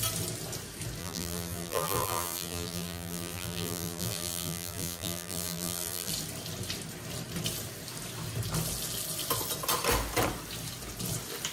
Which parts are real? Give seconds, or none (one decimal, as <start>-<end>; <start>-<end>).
0.0-1.0; 6.1-11.5